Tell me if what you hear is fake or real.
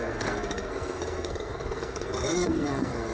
fake